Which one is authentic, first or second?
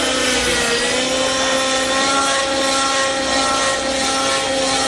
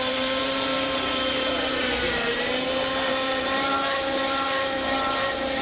first